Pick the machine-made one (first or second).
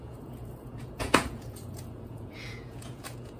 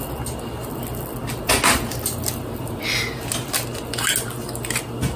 first